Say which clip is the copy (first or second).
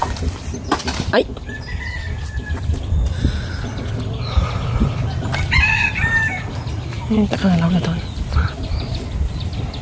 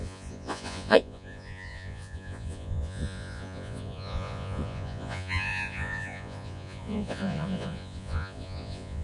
second